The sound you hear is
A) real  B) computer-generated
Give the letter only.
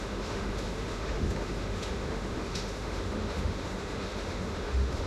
B